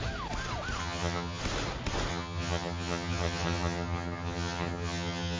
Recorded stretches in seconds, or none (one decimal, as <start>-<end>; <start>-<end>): 0.0-0.8; 1.4-2.1